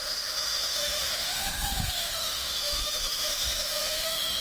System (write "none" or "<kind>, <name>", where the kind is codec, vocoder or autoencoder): autoencoder, DAC-VAE